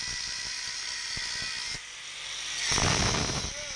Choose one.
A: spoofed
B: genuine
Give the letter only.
B